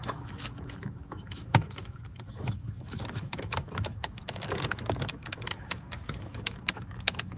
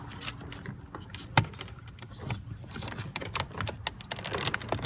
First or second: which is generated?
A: first